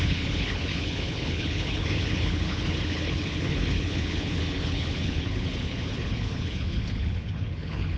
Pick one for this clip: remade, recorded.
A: remade